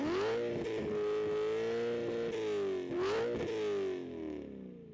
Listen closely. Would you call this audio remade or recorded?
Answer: recorded